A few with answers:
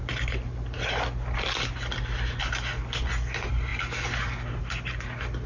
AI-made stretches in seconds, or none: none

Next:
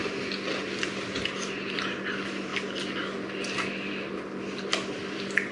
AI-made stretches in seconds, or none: none

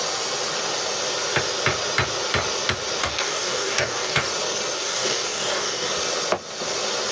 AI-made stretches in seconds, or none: 3.0-4.3 (codec, DAC); 4.8-5.9

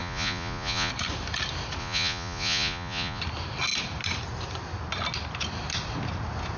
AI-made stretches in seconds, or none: 0.0-0.9 (vocoder, Vocos); 1.8-3.2

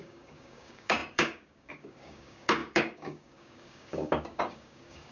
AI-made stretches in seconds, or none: 0.0-5.1 (codec, DAC)

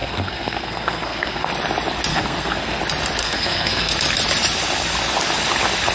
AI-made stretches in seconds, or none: 0.0-1.5 (codec, SNAC); 2.1-2.8; 3.2-3.9